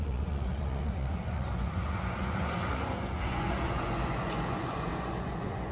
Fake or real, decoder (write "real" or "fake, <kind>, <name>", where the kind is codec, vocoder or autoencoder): fake, vocoder, Vocos